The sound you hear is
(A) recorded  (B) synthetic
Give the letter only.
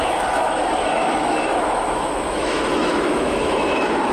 B